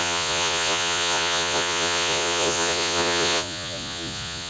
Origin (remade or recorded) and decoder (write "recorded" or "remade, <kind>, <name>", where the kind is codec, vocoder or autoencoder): remade, vocoder, Vocos